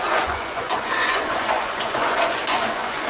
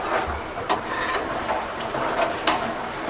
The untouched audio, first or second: second